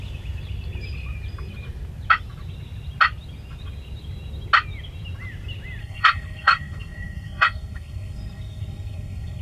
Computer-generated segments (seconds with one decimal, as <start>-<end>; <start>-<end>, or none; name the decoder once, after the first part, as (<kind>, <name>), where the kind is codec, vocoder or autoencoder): 5.8-9.4 (codec, SNAC)